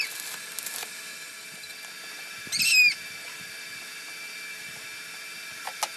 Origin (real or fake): real